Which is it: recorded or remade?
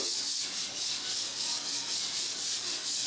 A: remade